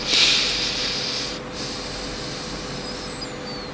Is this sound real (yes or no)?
yes